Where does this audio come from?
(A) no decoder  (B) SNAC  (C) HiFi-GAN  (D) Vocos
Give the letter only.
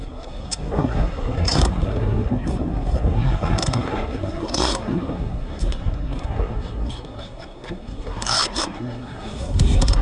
B